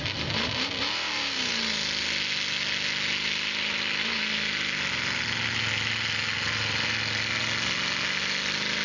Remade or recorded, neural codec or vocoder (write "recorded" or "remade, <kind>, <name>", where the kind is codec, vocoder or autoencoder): recorded